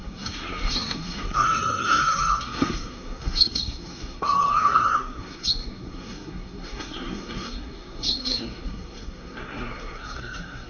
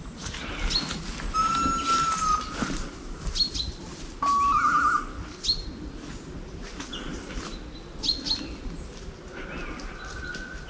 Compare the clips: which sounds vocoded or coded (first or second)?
first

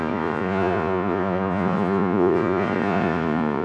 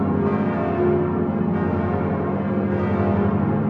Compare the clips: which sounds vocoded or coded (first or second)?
first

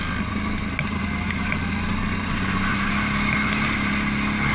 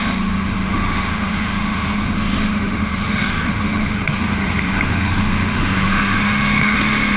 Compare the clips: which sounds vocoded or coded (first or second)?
second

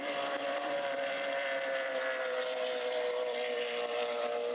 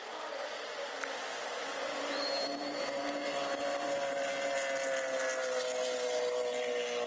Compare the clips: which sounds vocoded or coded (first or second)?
first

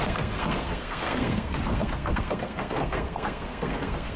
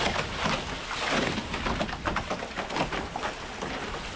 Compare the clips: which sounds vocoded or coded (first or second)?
first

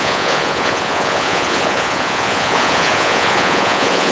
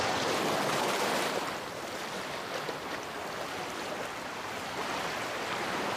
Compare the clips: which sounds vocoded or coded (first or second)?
first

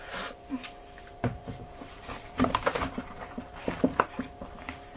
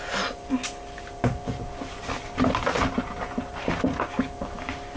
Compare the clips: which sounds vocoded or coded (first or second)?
first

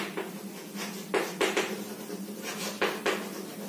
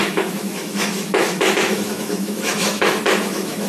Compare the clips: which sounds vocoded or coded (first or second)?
second